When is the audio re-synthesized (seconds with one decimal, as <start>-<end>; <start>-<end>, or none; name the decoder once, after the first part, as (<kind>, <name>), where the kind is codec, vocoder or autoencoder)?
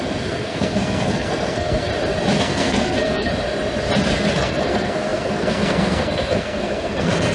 0.0-1.9 (codec, SNAC); 2.4-3.3; 4.3-7.3